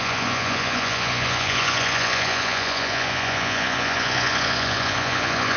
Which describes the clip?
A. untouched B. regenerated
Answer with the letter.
B